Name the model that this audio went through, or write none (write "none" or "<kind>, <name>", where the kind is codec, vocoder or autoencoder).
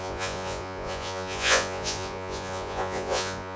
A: vocoder, Vocos